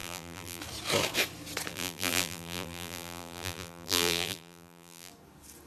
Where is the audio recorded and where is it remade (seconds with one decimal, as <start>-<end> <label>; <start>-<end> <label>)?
0.0-0.6 remade; 0.6-1.7 recorded; 1.7-5.1 remade; 5.1-5.7 recorded